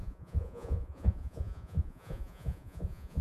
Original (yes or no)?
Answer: no